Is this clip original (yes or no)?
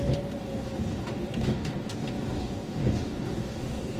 no